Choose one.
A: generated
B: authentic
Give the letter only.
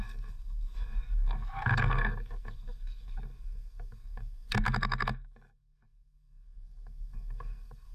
A